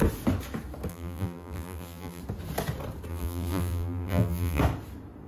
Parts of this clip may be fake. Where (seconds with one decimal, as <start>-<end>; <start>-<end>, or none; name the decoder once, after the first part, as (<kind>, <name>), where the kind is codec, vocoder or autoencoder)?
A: 0.9-2.2 (vocoder, BigVGAN v2); 3.1-4.6